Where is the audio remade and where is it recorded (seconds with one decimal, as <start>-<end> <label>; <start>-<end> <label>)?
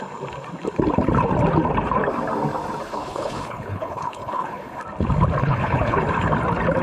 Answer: 0.0-2.9 recorded; 2.9-4.8 remade; 4.8-5.4 recorded; 5.4-6.0 remade; 6.0-6.8 recorded